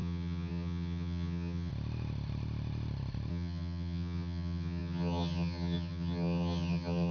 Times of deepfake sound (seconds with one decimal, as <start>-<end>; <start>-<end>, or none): 0.0-1.7; 3.3-7.1